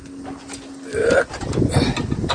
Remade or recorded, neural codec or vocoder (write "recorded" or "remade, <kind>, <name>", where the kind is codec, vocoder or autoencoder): recorded